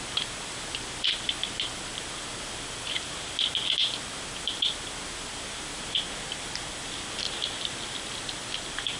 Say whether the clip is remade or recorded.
recorded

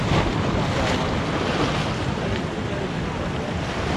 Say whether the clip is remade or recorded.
recorded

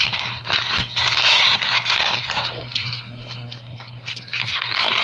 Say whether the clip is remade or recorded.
remade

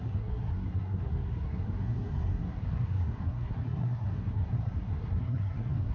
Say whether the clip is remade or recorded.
remade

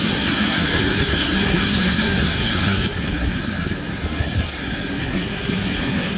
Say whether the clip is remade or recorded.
remade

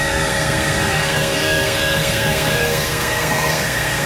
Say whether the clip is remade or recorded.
remade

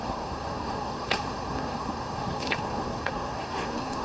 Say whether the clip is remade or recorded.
remade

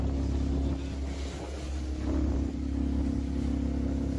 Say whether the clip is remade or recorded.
recorded